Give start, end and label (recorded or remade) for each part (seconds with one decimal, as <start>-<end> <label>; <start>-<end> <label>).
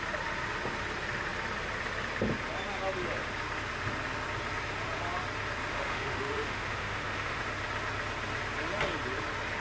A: 0.0-5.7 recorded; 5.7-7.4 remade; 7.4-9.6 recorded